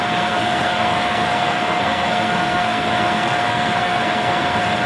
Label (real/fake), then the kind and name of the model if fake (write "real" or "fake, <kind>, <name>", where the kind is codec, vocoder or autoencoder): fake, codec, SNAC